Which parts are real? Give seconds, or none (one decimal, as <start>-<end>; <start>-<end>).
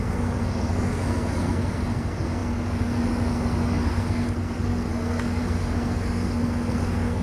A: none